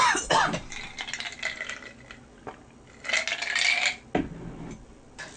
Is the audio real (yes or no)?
yes